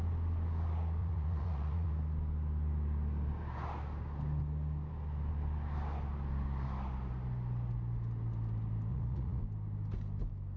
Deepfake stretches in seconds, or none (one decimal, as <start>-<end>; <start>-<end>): 1.0-1.9; 8.9-9.4